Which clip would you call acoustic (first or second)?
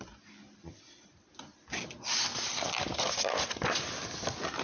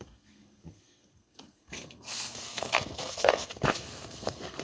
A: first